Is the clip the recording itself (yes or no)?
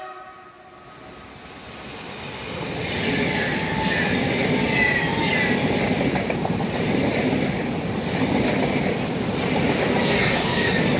yes